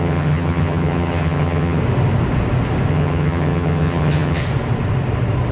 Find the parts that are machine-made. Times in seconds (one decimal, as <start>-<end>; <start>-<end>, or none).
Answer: 0.0-1.8; 2.9-4.4